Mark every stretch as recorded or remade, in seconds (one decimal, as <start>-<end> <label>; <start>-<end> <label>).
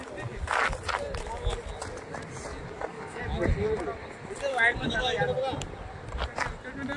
0.0-2.5 recorded; 2.5-3.2 remade; 3.2-4.5 recorded; 4.5-5.2 remade; 5.2-7.0 recorded